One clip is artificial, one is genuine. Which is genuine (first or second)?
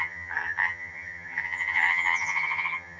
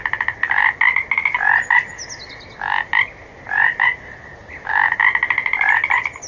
second